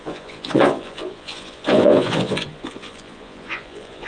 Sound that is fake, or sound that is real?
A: fake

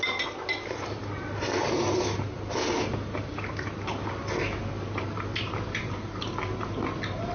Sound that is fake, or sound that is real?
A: real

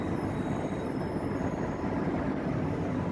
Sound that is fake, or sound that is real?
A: real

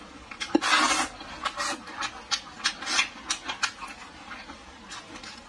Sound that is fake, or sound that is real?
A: real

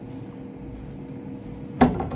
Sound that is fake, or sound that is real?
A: real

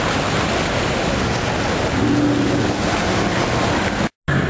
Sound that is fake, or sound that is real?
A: real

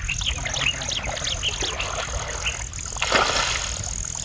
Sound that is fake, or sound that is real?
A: real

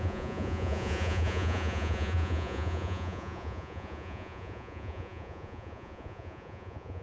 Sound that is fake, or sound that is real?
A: fake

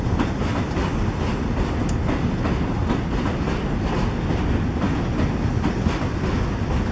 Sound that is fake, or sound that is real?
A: real